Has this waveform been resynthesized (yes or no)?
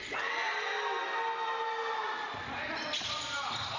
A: no